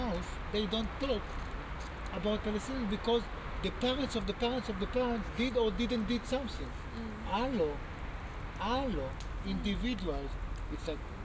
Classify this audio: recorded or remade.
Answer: recorded